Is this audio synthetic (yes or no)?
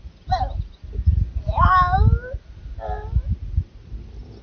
no